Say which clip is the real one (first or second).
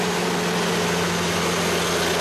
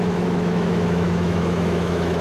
first